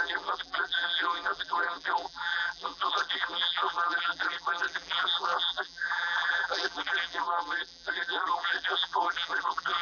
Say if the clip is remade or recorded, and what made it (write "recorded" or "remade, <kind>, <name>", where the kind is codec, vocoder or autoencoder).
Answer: remade, vocoder, BigVGAN v2